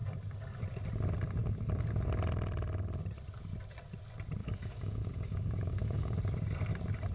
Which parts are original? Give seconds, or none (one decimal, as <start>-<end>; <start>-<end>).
0.0-4.4; 6.2-7.1